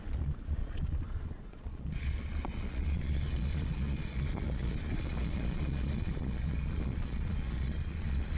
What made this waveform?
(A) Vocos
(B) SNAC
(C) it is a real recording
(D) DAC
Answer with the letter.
A